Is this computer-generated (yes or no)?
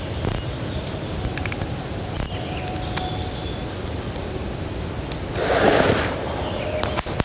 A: no